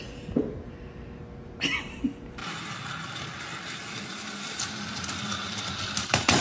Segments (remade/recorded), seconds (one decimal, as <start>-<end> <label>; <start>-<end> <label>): 0.0-2.4 remade; 2.4-6.0 recorded; 6.0-6.4 remade